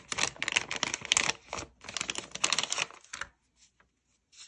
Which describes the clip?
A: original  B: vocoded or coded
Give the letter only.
A